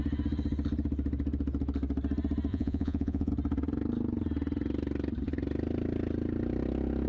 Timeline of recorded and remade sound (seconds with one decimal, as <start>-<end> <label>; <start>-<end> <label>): 0.0-2.5 recorded; 2.5-3.3 remade; 3.3-7.1 recorded